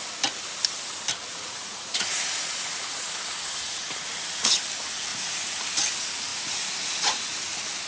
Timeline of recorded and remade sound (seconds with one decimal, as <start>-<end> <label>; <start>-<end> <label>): 0.0-1.3 recorded; 1.3-4.6 remade; 4.6-5.1 recorded; 5.1-5.6 remade; 5.6-6.3 recorded; 6.3-7.3 remade; 7.3-7.9 recorded